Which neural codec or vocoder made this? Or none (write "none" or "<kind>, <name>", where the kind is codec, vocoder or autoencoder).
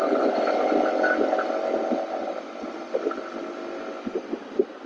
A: none